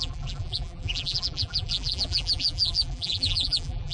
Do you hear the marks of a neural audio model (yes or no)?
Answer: yes